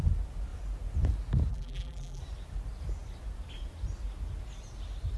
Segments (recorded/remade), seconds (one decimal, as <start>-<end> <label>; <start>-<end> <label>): 0.0-1.5 recorded; 1.5-2.2 remade; 2.2-5.2 recorded